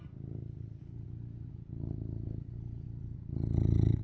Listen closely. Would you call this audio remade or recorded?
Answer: recorded